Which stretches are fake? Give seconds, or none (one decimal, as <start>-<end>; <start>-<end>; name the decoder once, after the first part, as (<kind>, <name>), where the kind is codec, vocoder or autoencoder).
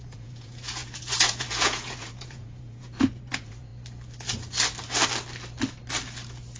0.0-3.7 (vocoder, Vocos)